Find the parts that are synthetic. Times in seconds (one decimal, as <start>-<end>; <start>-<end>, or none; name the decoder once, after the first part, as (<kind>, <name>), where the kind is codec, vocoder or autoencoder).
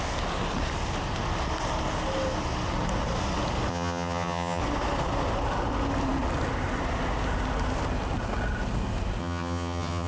3.7-4.6 (vocoder, HiFi-GAN); 9.2-10.1